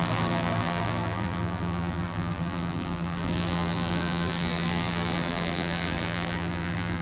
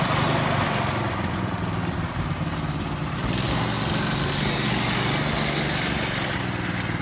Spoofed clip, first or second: first